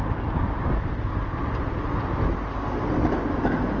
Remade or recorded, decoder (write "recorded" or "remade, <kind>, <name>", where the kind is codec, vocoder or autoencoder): recorded